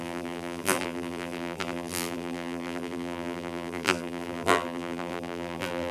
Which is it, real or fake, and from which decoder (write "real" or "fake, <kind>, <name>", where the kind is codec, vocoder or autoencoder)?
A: fake, vocoder, BigVGAN v2